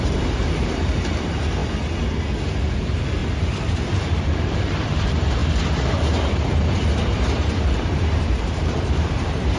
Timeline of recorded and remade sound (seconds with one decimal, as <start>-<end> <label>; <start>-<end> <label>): 0.0-1.6 remade; 1.6-2.8 recorded; 2.8-9.6 remade